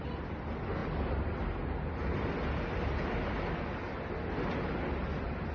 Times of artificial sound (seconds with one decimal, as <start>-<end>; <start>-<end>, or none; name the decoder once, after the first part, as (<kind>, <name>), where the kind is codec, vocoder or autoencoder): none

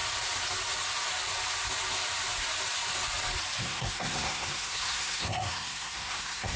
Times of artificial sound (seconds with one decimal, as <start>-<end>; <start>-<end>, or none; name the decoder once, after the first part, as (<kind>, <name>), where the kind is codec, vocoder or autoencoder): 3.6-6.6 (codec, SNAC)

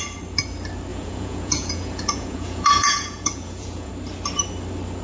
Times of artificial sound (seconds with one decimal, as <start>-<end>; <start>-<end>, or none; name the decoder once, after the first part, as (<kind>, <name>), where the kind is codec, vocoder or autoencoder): 0.9-3.9 (vocoder, Vocos)

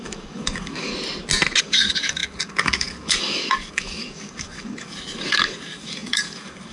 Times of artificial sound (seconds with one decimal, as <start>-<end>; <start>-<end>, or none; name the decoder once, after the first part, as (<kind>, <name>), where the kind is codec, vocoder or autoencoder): 0.0-0.9 (codec, DAC); 1.6-6.7

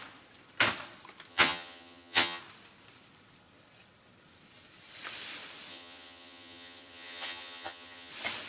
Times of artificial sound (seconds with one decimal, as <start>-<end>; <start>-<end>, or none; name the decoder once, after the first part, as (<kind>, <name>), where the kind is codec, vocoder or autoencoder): 1.3-2.4 (vocoder, HiFi-GAN); 5.7-8.1

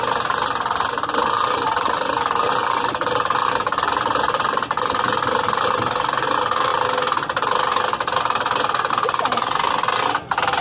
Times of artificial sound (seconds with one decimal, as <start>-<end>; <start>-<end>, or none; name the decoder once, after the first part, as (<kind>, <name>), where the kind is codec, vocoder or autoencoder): 2.6-3.7 (vocoder, BigVGAN v2); 6.7-8.9

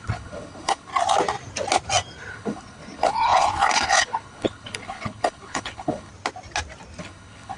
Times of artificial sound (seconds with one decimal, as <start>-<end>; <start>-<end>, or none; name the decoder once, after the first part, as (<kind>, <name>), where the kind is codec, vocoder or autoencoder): 0.0-0.9 (codec, HILCodec); 2.3-6.1; 7.0-7.6

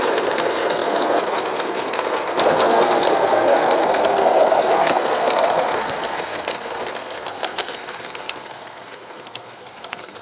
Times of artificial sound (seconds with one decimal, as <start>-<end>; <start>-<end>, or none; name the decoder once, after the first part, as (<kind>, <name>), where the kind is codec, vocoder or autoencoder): 0.0-10.2 (codec, SNAC)